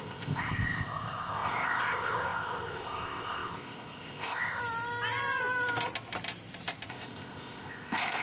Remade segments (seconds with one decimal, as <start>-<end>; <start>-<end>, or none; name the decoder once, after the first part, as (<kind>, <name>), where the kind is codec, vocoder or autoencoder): 0.0-4.6 (codec, ZipCodec); 6.9-8.2